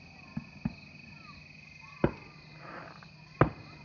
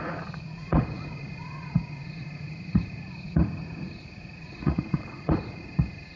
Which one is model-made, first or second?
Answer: second